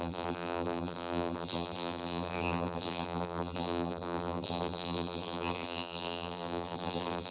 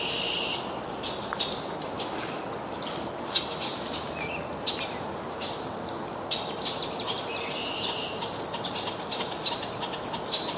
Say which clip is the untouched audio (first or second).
second